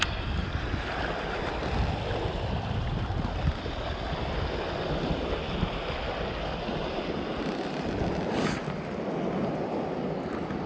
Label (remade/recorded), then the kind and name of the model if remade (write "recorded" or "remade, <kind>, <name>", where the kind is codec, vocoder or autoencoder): recorded